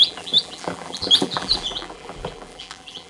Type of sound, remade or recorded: remade